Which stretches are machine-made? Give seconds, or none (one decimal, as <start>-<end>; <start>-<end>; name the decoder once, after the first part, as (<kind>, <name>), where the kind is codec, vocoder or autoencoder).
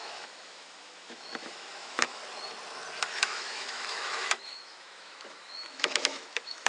0.0-2.2 (autoencoder, DAC-VAE); 3.0-6.7